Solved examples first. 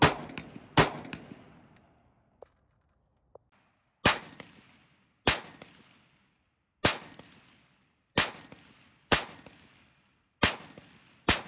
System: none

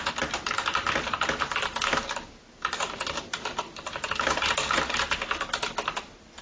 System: none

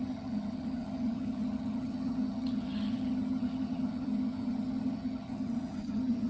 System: vocoder, HiFi-GAN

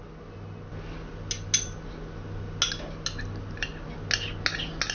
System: none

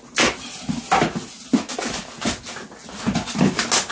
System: none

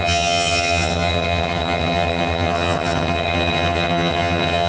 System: vocoder, HiFi-GAN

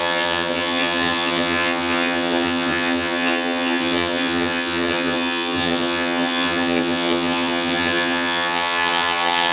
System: vocoder, HiFi-GAN